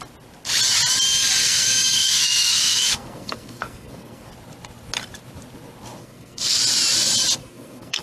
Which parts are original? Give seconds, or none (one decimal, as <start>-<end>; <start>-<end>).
0.0-1.4; 4.3-6.0; 6.6-7.4